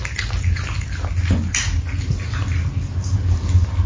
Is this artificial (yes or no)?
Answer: no